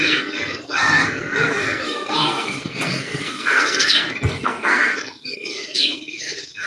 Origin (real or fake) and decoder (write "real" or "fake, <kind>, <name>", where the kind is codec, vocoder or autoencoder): fake, codec, SNAC